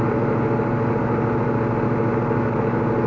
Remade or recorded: recorded